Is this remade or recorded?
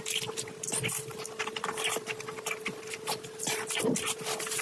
recorded